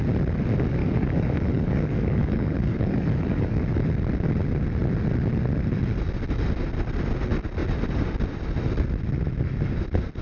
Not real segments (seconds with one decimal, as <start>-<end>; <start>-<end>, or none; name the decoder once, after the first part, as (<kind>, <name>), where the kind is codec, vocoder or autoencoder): 0.8-3.6 (codec, DAC)